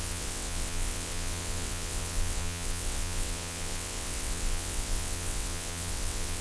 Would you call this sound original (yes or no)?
no